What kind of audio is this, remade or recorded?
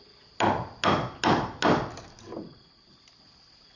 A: recorded